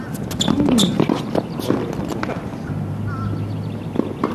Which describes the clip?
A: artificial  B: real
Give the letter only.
B